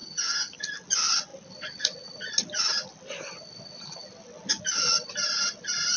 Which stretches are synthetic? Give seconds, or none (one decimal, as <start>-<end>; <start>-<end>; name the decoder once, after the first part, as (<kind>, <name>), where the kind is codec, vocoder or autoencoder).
0.0-0.6 (vocoder, HiFi-GAN)